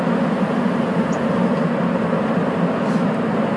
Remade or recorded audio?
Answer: recorded